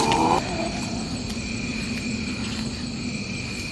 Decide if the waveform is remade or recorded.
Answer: recorded